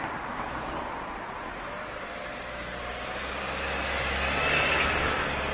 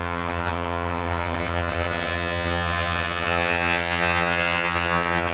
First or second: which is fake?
second